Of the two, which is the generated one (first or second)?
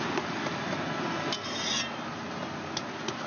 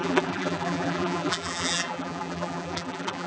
second